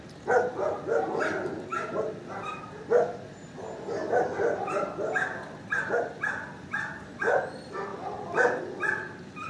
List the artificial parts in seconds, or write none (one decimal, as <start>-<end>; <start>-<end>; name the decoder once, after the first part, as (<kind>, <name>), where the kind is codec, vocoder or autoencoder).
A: none